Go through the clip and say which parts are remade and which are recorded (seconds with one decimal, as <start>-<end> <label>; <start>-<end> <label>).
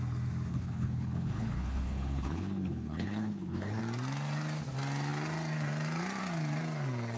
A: 0.0-0.5 recorded; 0.5-3.8 remade; 3.8-7.2 recorded